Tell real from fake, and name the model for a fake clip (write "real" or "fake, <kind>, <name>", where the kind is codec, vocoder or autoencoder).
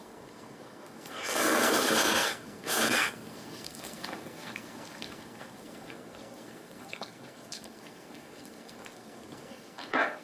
fake, codec, SNAC